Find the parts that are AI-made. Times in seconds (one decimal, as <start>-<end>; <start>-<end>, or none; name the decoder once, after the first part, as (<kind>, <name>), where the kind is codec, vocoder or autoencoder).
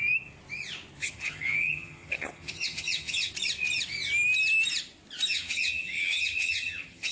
1.0-3.3 (vocoder, HiFi-GAN); 5.3-7.1